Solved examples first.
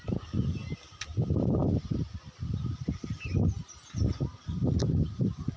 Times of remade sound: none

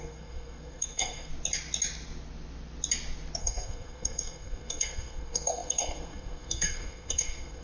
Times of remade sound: 0.0-1.3 (codec, SNAC); 3.4-7.6

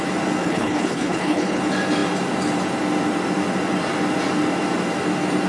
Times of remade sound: 0.4-1.6 (codec, HILCodec)

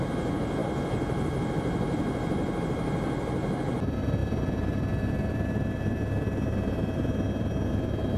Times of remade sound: 4.2-7.7 (vocoder, BigVGAN v2)

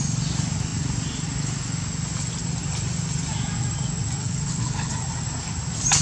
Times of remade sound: 4.2-4.9 (codec, HILCodec)

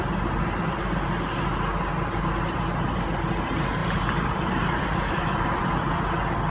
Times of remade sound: 3.8-5.6 (vocoder, BigVGAN v2)